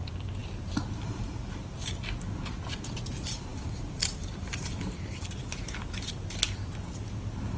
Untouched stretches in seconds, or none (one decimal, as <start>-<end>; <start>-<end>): 0.0-7.6